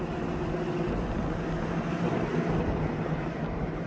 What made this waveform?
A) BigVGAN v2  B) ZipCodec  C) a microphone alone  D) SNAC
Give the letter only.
C